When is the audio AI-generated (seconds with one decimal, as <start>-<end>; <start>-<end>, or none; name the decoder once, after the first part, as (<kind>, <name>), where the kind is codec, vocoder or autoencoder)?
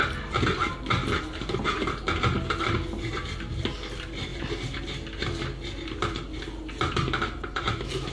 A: none